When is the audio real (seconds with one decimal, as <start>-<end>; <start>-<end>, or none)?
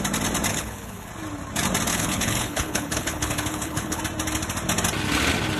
0.0-0.5; 1.1-1.9; 4.0-5.6